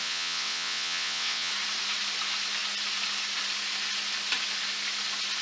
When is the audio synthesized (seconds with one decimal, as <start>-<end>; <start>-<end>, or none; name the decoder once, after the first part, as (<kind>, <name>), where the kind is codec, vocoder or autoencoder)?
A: 0.0-1.5 (vocoder, WaveNeXt)